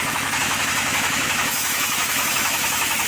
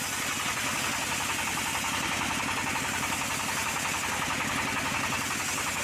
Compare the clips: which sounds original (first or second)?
second